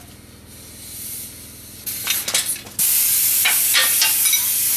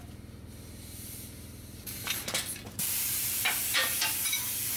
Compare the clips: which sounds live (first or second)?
first